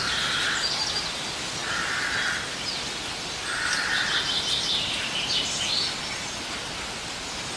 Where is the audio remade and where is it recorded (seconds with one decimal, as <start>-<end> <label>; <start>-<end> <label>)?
0.0-7.6 recorded